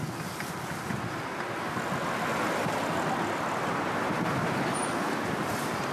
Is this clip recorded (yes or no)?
yes